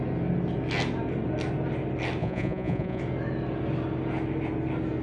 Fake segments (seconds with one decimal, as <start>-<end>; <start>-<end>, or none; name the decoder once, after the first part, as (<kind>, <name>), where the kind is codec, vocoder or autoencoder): 2.2-3.0 (vocoder, Vocos)